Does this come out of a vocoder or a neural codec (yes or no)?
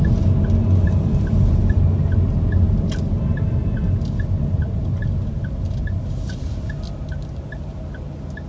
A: no